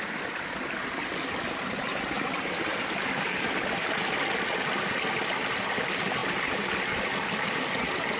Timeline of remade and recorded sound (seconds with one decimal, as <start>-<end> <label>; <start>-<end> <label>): 0.0-1.9 recorded; 1.9-4.0 remade; 4.0-6.2 recorded; 6.2-6.7 remade; 6.7-8.2 recorded